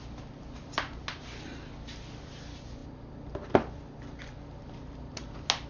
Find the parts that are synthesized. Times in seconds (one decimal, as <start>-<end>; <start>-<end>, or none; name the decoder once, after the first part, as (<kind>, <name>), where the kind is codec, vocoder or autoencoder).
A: none